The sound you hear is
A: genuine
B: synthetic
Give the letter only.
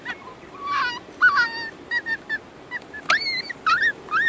A